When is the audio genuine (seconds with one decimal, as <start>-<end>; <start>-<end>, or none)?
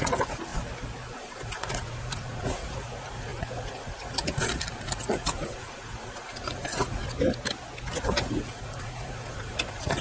0.5-1.1; 7.0-8.2